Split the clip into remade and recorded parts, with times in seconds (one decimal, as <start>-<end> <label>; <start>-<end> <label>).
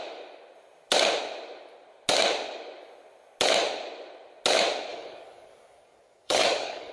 0.0-4.9 recorded; 4.9-6.9 remade